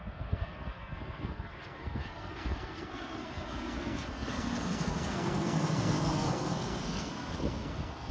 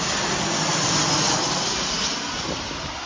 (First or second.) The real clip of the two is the second